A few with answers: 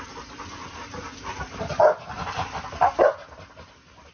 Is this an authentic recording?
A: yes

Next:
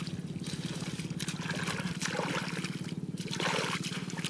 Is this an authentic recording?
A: yes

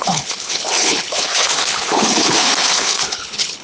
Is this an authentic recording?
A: no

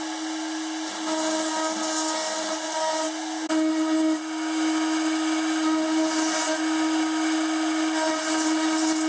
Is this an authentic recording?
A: yes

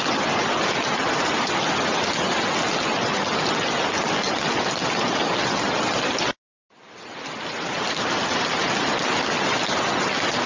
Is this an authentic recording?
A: yes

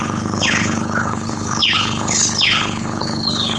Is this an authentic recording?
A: no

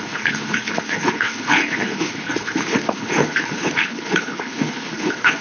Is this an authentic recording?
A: no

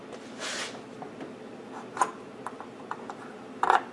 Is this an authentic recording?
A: yes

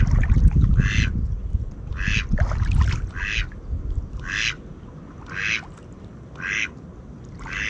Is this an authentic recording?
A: yes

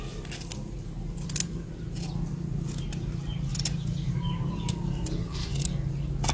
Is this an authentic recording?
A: yes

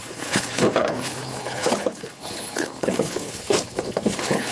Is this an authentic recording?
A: no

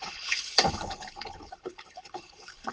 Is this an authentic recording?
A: no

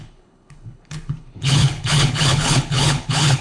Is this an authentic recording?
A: no